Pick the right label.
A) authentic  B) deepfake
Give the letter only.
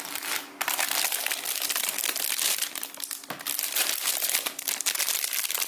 A